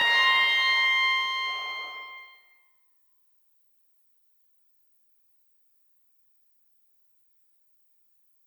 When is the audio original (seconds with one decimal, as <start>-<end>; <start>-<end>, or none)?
0.0-4.6